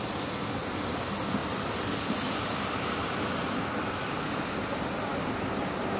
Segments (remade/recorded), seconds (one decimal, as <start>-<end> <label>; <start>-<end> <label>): 0.0-6.0 recorded